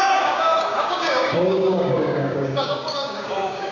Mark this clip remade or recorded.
remade